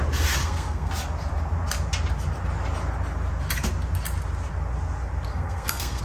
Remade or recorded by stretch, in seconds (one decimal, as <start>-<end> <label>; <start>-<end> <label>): 0.0-0.4 recorded; 0.4-0.9 remade; 0.9-5.3 recorded; 5.3-6.0 remade